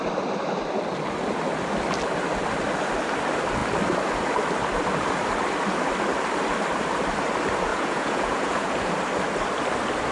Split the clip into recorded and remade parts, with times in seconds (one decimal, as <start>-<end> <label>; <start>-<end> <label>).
0.0-7.7 recorded; 7.7-8.9 remade; 8.9-10.1 recorded